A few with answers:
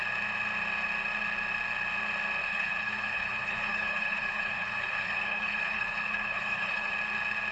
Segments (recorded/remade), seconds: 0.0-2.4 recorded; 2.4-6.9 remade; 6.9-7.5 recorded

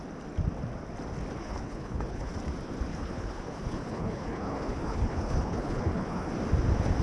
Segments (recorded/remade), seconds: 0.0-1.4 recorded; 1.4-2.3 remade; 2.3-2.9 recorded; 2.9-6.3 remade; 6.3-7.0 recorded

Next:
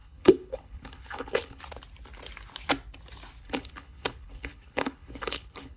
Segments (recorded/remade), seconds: 0.0-1.6 remade; 1.6-3.4 recorded; 3.4-5.8 remade

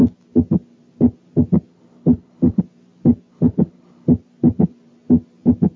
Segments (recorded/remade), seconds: 0.0-1.7 recorded; 1.7-2.6 remade; 2.6-3.3 recorded; 3.3-4.1 remade; 4.1-5.8 recorded

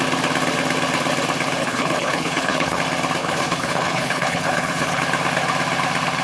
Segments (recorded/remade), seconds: 0.0-1.6 recorded; 1.6-2.8 remade; 2.8-3.2 recorded; 3.2-5.0 remade; 5.0-6.2 recorded